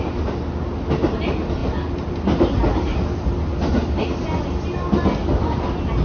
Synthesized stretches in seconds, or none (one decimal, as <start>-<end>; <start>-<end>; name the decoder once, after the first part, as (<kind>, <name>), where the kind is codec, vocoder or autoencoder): none